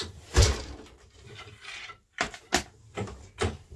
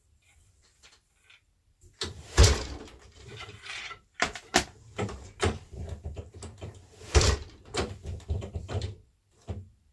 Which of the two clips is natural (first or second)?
first